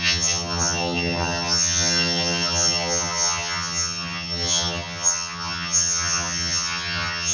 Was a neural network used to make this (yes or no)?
yes